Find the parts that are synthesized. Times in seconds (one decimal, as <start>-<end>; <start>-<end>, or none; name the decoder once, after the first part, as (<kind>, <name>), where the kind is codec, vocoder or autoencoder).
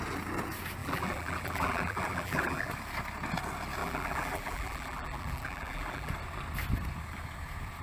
0.8-2.7 (vocoder, BigVGAN v2); 3.8-6.1